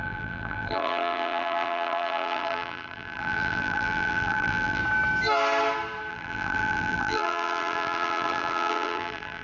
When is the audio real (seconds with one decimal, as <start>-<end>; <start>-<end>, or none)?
4.8-6.1